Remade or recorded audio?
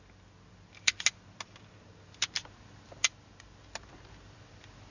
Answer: recorded